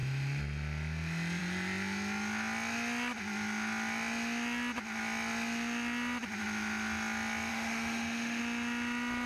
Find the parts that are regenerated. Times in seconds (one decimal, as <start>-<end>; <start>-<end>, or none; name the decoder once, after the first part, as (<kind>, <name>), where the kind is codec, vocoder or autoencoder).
7.5-8.4 (autoencoder, DAC-VAE)